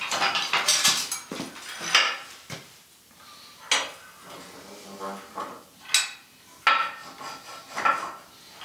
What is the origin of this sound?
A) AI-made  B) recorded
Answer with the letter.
B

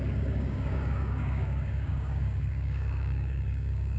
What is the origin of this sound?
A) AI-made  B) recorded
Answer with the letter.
A